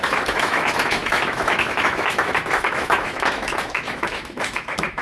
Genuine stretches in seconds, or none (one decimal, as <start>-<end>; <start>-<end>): none